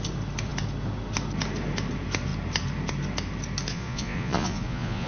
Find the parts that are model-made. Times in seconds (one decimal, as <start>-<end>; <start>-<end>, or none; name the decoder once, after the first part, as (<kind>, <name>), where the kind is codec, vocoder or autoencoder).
3.7-5.1 (vocoder, Vocos)